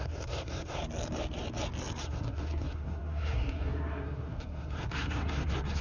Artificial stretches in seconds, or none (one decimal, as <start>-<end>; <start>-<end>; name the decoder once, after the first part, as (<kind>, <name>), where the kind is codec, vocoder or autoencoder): 0.0-0.8 (codec, SNAC); 2.0-5.8